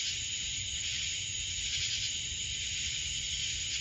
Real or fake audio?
real